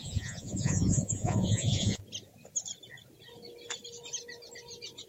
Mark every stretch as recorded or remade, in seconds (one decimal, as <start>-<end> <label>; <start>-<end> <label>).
0.0-2.0 remade; 2.0-5.1 recorded